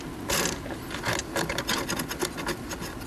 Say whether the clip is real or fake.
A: real